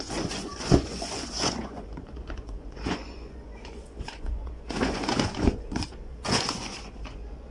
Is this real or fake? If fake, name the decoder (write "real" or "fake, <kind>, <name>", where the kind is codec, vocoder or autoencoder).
fake, vocoder, Vocos